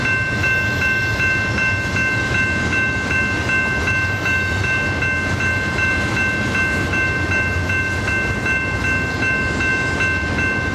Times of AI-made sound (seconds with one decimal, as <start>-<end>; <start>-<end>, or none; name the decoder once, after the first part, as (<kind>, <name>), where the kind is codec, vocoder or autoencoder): none